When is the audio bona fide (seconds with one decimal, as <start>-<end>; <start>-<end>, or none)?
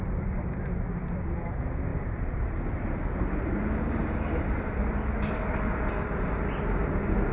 0.0-1.9; 3.3-7.3